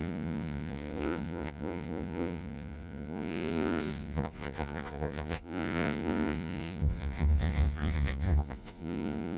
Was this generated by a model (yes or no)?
yes